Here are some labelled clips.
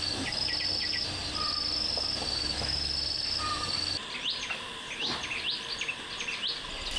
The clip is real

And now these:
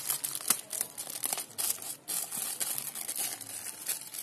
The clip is real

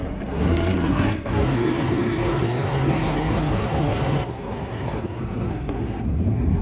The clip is fake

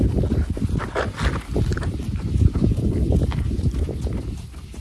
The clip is real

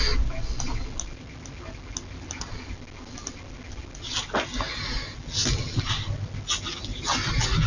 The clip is real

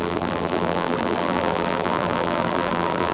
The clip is fake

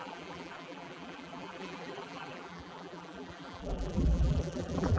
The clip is fake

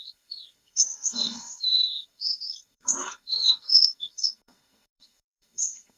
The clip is fake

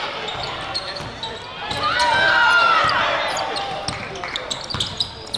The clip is real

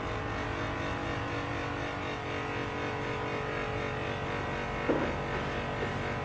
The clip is real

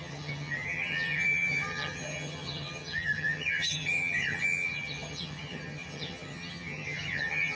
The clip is fake